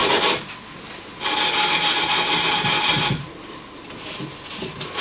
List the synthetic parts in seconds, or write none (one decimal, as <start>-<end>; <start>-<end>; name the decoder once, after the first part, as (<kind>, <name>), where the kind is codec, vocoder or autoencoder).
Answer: none